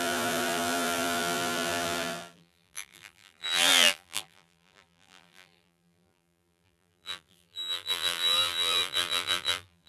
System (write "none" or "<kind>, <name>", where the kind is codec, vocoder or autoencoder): vocoder, BigVGAN v2